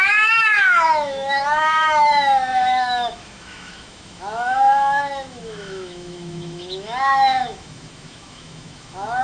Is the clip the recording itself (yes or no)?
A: no